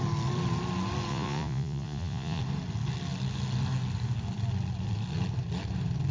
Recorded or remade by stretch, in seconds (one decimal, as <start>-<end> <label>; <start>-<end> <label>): 0.0-1.1 recorded; 1.1-2.4 remade; 2.4-6.1 recorded